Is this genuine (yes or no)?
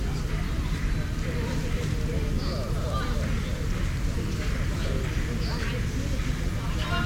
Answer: yes